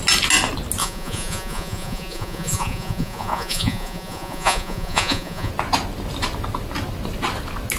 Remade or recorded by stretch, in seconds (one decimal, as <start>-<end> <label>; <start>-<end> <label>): 0.0-0.8 recorded; 0.8-5.5 remade; 5.5-7.8 recorded